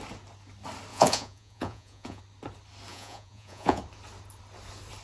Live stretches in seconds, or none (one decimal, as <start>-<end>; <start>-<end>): 0.0-0.9; 2.2-2.9; 3.8-5.0